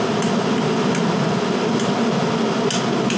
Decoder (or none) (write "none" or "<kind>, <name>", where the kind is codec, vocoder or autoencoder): none